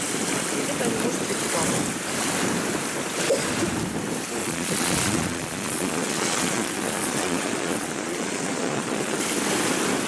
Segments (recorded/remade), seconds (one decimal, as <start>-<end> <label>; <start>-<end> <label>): 0.0-4.4 recorded; 4.4-9.2 remade; 9.2-10.1 recorded

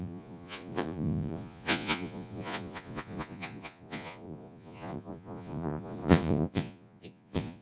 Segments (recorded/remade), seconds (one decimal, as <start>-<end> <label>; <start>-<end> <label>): 0.0-7.6 remade

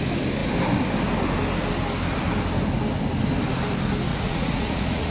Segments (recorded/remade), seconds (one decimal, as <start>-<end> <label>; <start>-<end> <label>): 0.0-4.1 recorded; 4.1-5.1 remade